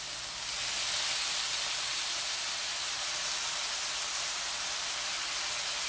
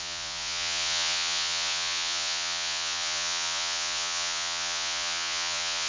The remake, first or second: second